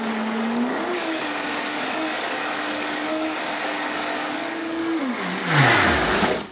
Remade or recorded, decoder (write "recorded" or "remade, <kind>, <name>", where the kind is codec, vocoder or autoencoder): remade, codec, DAC